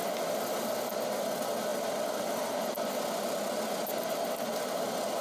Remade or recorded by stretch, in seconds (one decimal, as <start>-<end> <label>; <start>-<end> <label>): 0.0-5.2 recorded